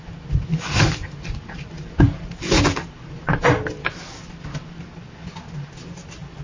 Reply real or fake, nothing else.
real